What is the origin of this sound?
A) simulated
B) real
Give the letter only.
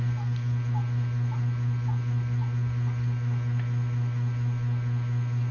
B